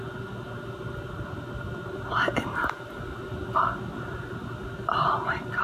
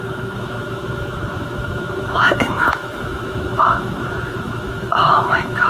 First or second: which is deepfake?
second